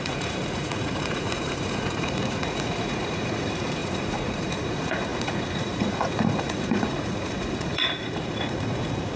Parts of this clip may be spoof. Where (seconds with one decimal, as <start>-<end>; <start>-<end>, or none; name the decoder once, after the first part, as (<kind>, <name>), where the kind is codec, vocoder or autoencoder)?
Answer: 0.0-9.2 (vocoder, Vocos)